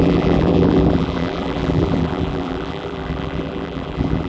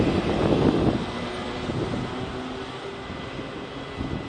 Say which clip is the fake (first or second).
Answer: first